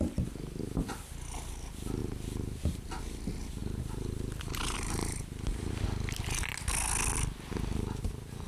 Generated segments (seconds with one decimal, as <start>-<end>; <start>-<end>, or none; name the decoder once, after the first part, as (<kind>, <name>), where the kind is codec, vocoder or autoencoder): 3.6-5.7 (vocoder, BigVGAN v2)